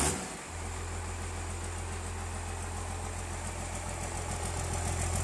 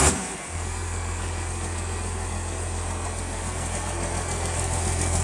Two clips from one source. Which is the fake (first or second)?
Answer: second